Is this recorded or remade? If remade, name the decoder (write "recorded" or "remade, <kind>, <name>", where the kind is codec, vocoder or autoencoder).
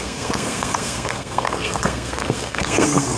remade, codec, SNAC